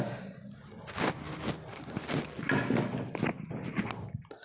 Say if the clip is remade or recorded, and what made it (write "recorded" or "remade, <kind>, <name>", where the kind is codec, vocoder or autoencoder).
recorded